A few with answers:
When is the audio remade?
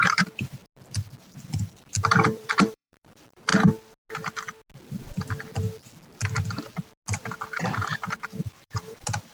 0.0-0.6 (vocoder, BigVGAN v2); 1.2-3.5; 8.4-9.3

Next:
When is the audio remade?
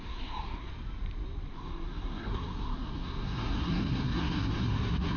0.0-0.7 (codec, SNAC); 1.5-5.2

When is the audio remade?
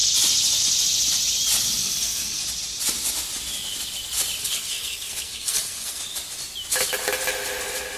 1.8-2.4 (codec, SNAC); 4.4-6.0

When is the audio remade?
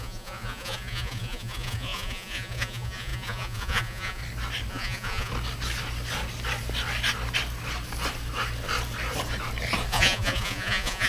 0.0-4.2 (vocoder, Vocos); 4.7-5.3; 9.9-11.1